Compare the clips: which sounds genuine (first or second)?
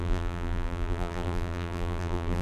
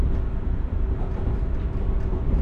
second